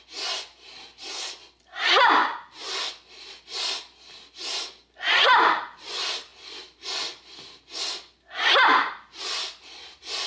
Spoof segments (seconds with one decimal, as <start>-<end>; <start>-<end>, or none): 2.2-2.9